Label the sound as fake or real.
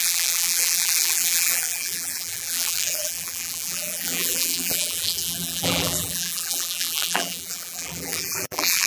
fake